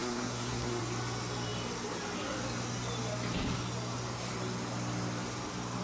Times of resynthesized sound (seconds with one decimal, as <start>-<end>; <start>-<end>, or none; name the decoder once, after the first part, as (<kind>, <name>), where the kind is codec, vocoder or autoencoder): 0.0-0.8 (codec, SNAC)